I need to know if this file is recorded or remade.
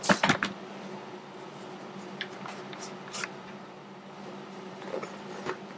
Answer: recorded